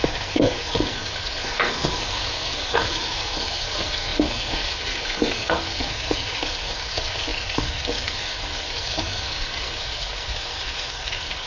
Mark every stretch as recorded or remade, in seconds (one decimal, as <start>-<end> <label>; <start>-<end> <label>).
0.0-11.5 remade